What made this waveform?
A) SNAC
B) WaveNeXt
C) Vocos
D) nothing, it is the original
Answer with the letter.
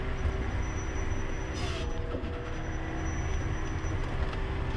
D